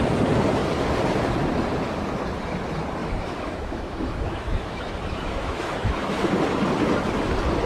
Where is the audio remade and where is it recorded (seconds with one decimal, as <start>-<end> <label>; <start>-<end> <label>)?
0.0-3.0 recorded; 3.0-6.3 remade; 6.3-7.7 recorded